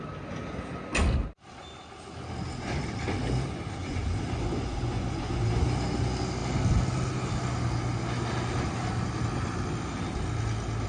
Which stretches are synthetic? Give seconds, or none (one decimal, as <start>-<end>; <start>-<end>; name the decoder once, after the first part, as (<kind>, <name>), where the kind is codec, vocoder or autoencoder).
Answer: 3.8-5.4 (vocoder, Vocos)